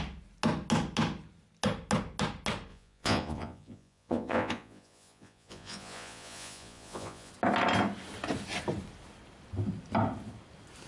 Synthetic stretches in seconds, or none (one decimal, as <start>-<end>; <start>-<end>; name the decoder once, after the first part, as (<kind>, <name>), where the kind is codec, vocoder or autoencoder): 2.7-7.3 (vocoder, Vocos)